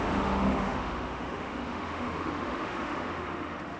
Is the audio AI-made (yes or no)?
yes